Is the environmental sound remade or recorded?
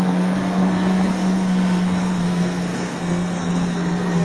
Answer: remade